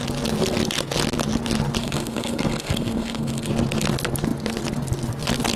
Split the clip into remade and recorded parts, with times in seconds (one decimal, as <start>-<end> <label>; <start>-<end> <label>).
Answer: 0.0-1.8 recorded; 1.8-3.5 remade; 3.5-5.6 recorded